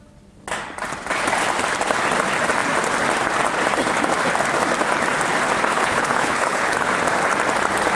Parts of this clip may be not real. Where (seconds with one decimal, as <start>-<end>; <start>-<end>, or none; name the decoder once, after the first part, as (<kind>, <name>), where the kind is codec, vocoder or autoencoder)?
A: 5.7-6.9 (codec, HILCodec)